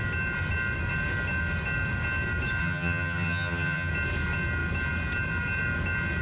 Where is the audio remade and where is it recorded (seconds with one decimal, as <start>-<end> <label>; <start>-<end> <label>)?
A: 0.0-2.6 recorded; 2.6-3.9 remade; 3.9-6.2 recorded

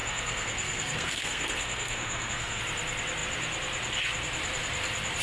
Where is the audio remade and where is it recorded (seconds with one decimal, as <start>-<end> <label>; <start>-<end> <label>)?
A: 0.0-2.6 remade; 2.6-5.2 recorded